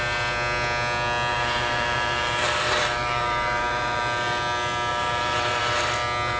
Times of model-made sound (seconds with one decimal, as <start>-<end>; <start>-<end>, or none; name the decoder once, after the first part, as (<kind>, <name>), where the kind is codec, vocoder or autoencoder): 1.3-4.0 (vocoder, BigVGAN v2); 4.9-5.6